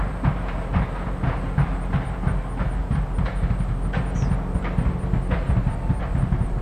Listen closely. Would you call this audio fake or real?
real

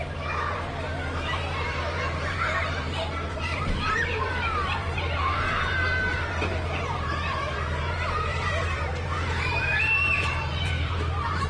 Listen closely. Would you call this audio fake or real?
fake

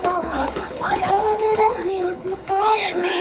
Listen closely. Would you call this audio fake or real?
fake